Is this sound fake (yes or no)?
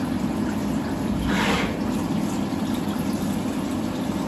yes